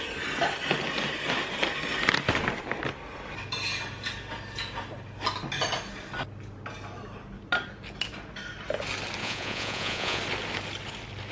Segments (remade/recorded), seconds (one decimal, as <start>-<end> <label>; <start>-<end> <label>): 0.0-9.2 recorded; 9.2-10.2 remade; 10.2-11.3 recorded